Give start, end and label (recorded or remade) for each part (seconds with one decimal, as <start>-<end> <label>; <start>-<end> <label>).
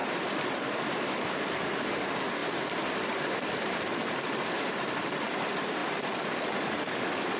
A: 0.0-1.5 remade; 1.5-2.4 recorded; 2.4-3.7 remade; 3.7-7.4 recorded